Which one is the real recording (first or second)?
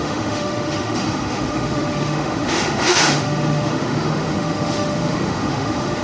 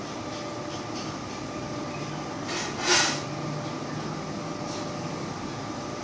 second